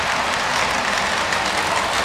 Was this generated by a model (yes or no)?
no